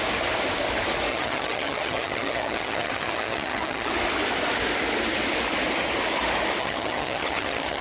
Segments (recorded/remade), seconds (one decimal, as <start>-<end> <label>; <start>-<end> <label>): 0.0-1.1 recorded; 1.1-3.9 remade; 3.9-6.6 recorded; 6.6-7.8 remade